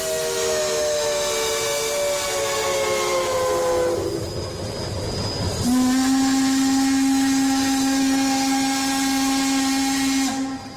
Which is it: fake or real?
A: real